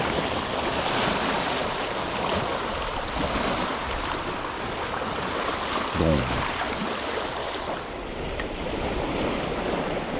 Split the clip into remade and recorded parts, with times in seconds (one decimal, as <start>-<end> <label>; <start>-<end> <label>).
0.0-1.6 recorded; 1.6-5.1 remade; 5.1-10.2 recorded